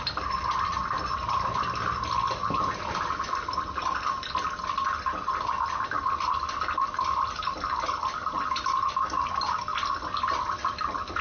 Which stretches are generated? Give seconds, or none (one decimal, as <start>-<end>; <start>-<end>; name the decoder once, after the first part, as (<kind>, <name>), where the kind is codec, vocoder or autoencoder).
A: none